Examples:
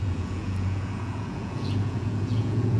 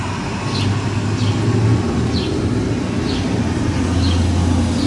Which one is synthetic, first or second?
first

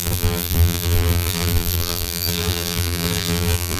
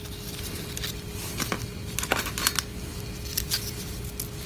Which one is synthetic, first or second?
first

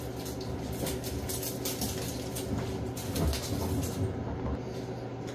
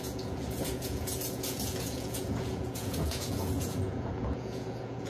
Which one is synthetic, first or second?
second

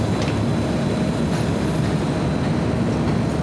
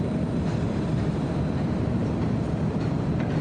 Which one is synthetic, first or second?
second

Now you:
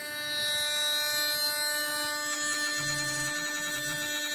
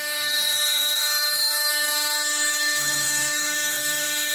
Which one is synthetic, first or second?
second